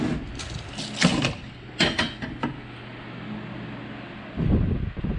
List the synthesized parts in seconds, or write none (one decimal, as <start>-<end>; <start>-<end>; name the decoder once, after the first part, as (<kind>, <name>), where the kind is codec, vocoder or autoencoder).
1.1-1.7 (vocoder, BigVGAN v2)